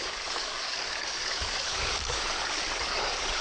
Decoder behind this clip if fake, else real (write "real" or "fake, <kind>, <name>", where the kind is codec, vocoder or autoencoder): fake, codec, DAC